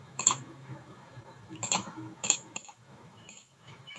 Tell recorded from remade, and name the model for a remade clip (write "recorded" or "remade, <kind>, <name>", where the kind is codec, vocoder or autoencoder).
remade, autoencoder, DAC-VAE